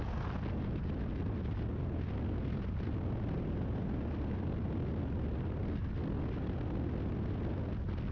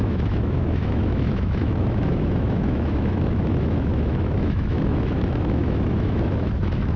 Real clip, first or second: first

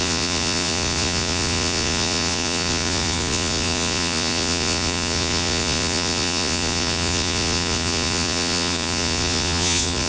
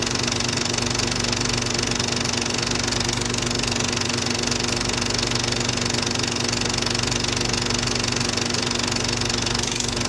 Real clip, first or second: second